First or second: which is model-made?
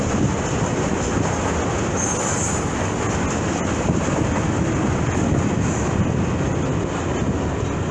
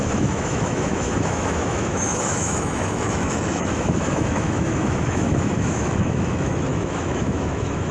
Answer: second